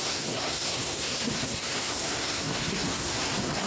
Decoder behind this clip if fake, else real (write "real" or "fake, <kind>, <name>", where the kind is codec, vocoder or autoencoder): fake, codec, SNAC